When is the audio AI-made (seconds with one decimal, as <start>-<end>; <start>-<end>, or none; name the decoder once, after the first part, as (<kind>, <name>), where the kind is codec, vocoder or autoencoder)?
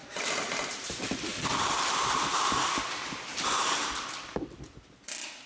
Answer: 0.0-0.9 (vocoder, BigVGAN v2); 1.3-3.9